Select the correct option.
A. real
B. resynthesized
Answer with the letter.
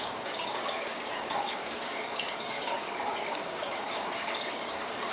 B